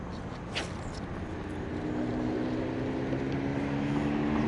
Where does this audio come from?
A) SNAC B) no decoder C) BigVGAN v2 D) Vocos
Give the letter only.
B